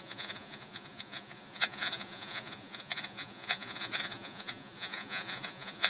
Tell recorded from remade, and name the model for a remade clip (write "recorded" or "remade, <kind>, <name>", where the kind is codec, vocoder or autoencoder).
remade, vocoder, Vocos